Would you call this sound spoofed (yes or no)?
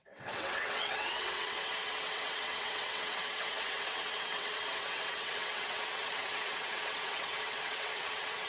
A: yes